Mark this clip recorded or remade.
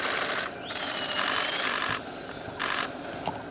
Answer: recorded